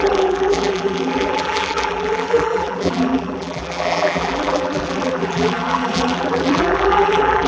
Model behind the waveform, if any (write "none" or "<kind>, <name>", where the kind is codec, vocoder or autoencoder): vocoder, BigVGAN v2